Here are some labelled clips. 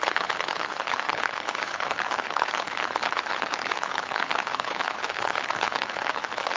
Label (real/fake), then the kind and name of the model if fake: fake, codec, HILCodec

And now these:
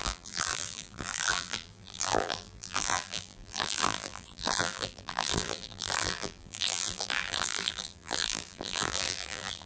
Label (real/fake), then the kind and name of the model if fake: fake, vocoder, BigVGAN v2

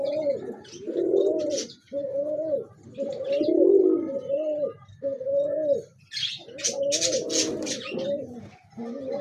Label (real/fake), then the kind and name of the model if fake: real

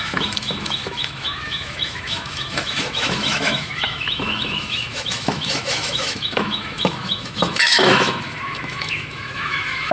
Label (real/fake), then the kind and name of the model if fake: fake, autoencoder, DAC-VAE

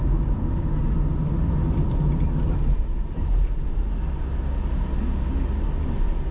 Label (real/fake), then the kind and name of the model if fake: real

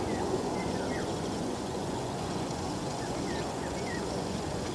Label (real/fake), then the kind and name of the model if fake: fake, vocoder, Vocos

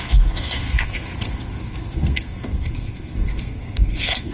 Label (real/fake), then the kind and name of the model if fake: fake, codec, SNAC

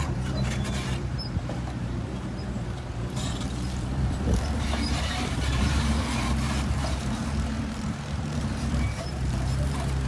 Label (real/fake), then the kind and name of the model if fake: fake, vocoder, BigVGAN v2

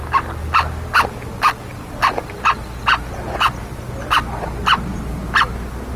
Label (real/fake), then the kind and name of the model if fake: real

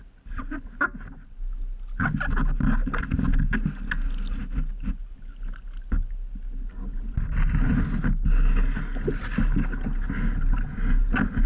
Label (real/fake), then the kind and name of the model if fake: real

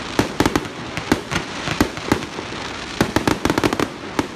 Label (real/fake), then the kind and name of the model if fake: real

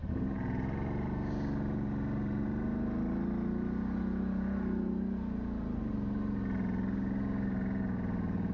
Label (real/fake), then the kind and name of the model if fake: real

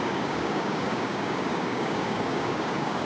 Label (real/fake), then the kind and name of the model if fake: fake, codec, DAC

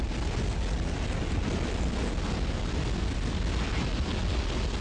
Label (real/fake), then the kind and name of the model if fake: real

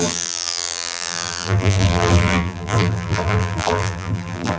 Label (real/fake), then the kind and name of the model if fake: fake, vocoder, BigVGAN v2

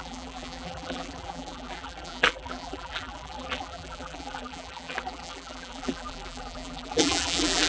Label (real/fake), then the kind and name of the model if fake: fake, vocoder, BigVGAN v2